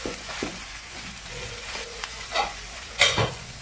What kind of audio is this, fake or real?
fake